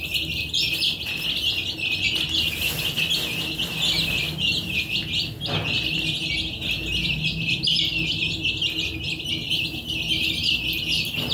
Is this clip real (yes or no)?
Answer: yes